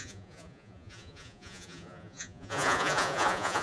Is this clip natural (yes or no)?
no